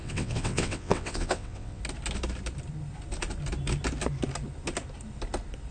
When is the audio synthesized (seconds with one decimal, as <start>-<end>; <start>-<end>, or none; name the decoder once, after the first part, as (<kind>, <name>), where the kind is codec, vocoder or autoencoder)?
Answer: 0.0-1.8 (vocoder, WaveNeXt)

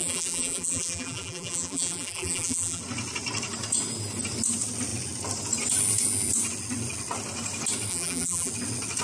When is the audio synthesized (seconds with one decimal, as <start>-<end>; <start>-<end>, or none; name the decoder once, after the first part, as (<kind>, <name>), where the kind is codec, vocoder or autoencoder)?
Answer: 0.0-2.8 (vocoder, BigVGAN v2); 7.9-8.5